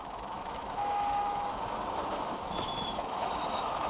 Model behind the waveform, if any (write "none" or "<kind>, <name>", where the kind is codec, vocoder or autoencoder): autoencoder, DAC-VAE